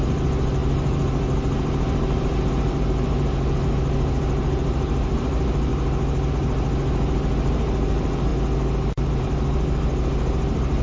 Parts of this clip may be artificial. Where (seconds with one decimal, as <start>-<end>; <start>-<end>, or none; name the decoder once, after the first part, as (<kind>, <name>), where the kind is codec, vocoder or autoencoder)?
0.0-5.7 (vocoder, BigVGAN v2); 6.3-8.3; 9.2-10.8